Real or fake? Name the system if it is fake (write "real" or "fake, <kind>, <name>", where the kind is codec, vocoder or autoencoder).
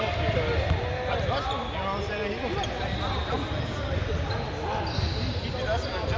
real